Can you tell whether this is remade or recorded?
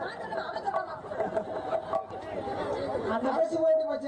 recorded